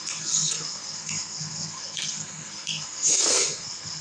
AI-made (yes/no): yes